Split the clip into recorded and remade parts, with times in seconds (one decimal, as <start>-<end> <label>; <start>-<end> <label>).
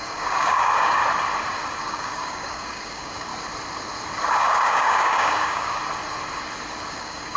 0.0-1.0 remade; 1.0-1.8 recorded; 1.8-3.3 remade; 3.3-4.3 recorded; 4.3-5.8 remade; 5.8-6.9 recorded; 6.9-7.4 remade